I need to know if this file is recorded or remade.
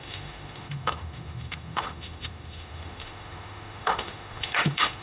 remade